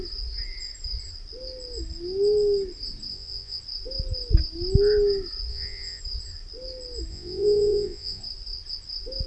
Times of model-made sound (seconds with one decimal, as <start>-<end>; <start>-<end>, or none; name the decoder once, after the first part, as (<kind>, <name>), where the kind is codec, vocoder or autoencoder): 3.1-3.6 (vocoder, Vocos); 5.5-6.0; 7.1-8.2